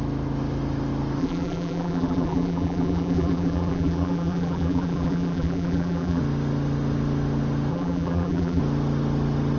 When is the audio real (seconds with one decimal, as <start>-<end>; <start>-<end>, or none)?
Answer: 0.0-1.2; 6.2-7.7; 8.6-9.6